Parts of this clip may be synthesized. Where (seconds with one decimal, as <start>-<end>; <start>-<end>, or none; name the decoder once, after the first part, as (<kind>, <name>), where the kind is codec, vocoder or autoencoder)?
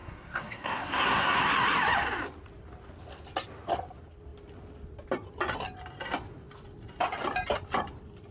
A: 0.0-1.4 (codec, SNAC)